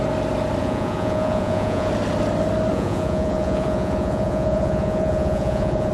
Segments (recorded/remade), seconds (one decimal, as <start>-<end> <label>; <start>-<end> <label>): 0.0-0.6 recorded; 0.6-1.9 remade; 1.9-2.7 recorded; 2.7-5.9 remade